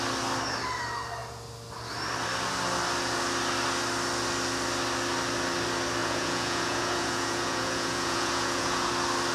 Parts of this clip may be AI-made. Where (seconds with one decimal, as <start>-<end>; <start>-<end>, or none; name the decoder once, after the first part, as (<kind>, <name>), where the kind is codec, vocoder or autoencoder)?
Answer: 6.0-8.9 (vocoder, Vocos)